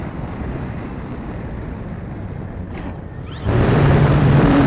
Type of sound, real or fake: fake